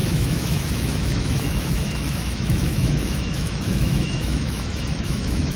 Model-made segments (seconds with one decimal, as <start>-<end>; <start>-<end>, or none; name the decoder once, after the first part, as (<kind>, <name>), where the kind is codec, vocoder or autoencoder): 0.0-5.6 (autoencoder, DAC-VAE)